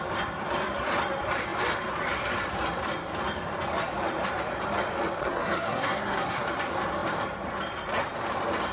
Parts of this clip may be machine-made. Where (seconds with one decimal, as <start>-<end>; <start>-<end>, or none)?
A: 5.2-6.4